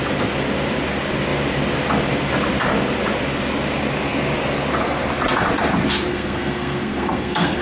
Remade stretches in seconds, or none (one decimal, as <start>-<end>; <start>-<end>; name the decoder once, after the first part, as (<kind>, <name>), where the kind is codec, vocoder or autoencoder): 6.1-7.6 (codec, SNAC)